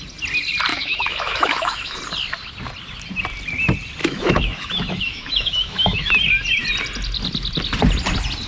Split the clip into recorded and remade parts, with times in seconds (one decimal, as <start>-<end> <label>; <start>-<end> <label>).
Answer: 0.0-0.7 recorded; 0.7-2.0 remade; 2.0-4.0 recorded; 4.0-6.1 remade; 6.1-8.5 recorded